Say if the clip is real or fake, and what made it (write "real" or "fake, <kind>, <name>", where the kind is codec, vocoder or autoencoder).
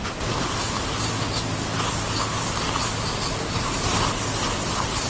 real